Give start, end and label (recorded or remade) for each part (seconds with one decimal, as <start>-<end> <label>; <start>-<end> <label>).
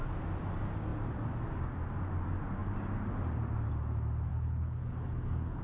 0.0-4.3 recorded; 4.3-5.6 remade